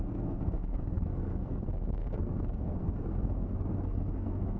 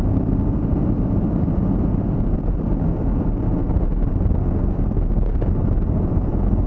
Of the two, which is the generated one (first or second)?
first